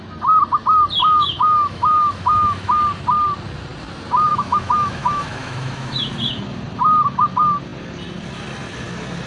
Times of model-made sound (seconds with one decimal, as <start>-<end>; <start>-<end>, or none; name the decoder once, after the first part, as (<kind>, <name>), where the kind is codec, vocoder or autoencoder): 1.0-2.8 (autoencoder, DAC-VAE); 4.3-6.1